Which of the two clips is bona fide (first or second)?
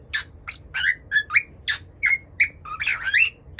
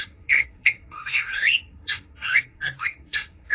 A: first